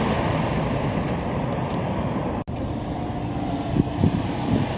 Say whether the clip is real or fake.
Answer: real